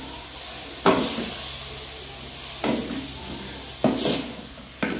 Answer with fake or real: real